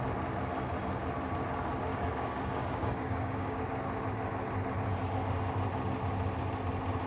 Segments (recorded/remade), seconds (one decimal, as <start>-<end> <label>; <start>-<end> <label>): 0.0-1.9 recorded; 1.9-3.6 remade; 3.6-7.1 recorded

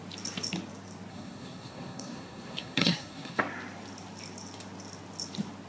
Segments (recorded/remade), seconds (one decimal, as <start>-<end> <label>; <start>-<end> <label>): 0.0-1.1 recorded; 1.1-3.4 remade; 3.4-5.7 recorded